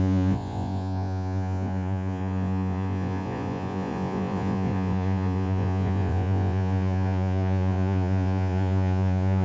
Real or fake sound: fake